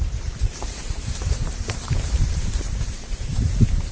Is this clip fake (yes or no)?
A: yes